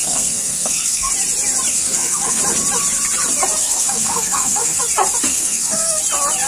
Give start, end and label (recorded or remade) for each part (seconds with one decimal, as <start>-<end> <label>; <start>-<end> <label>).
0.0-1.1 remade; 1.1-1.7 recorded; 1.7-2.4 remade; 2.4-3.6 recorded; 3.6-4.8 remade; 4.8-5.3 recorded; 5.3-6.0 remade; 6.0-6.5 recorded

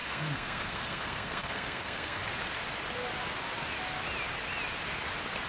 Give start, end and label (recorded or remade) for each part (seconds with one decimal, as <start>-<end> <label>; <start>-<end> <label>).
0.0-2.2 remade; 2.2-5.5 recorded

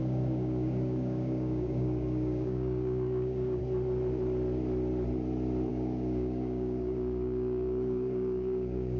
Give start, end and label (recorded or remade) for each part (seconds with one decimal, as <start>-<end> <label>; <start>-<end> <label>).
0.0-3.6 remade; 3.6-5.7 recorded; 5.7-9.0 remade

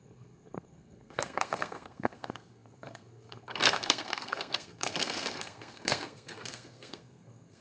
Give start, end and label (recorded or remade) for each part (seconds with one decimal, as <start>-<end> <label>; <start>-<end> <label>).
0.0-7.6 remade

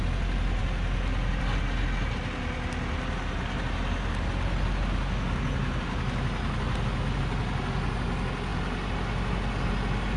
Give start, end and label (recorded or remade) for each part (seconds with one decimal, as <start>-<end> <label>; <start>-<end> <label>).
0.0-10.2 recorded

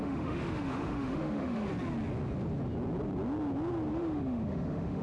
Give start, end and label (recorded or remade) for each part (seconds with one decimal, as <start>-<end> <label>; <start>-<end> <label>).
0.0-1.7 remade; 1.7-3.9 recorded; 3.9-5.0 remade

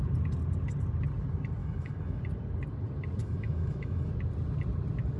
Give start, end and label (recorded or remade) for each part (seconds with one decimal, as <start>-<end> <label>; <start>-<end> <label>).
0.0-1.6 recorded; 1.6-2.2 remade; 2.2-3.2 recorded; 3.2-4.1 remade; 4.1-5.2 recorded